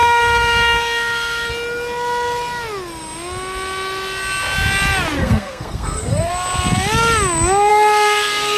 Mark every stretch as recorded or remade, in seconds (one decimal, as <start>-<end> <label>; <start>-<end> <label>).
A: 0.0-1.5 remade; 1.5-5.2 recorded; 5.2-6.3 remade; 6.3-7.7 recorded; 7.7-8.6 remade